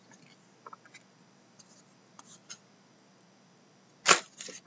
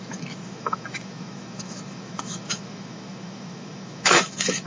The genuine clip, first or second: first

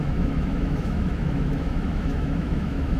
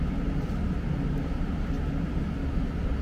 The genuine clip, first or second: second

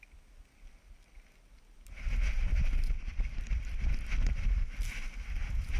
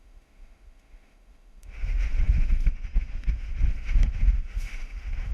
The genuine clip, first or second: first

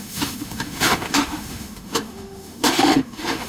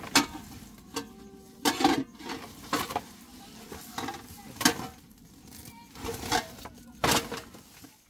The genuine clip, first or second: second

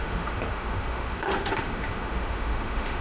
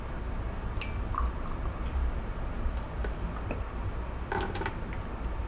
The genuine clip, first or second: second